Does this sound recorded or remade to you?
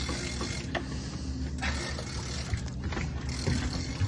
recorded